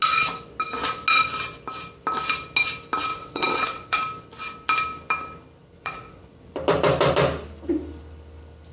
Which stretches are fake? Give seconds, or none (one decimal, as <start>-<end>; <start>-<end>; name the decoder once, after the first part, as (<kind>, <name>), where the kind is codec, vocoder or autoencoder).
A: 3.1-4.0 (vocoder, WaveNeXt); 5.6-6.5

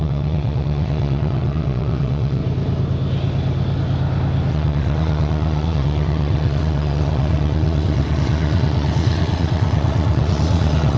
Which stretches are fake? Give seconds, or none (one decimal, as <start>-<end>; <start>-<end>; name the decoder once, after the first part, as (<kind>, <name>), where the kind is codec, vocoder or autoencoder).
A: 0.0-2.4 (vocoder, WaveNeXt); 4.5-11.0

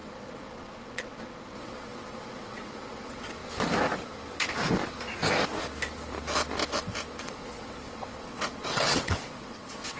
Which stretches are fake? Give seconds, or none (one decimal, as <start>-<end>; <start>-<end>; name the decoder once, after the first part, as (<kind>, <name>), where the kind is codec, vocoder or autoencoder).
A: 0.0-3.4 (vocoder, WaveNeXt); 7.2-10.0

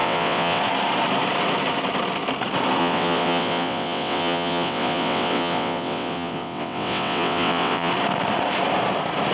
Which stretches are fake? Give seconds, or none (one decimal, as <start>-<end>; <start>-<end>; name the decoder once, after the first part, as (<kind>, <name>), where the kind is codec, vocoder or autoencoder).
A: 0.0-0.6 (vocoder, WaveNeXt); 2.8-7.9